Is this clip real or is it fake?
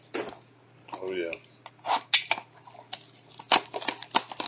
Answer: real